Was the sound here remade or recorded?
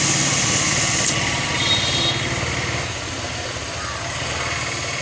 recorded